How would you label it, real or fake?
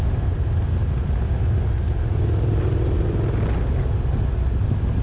real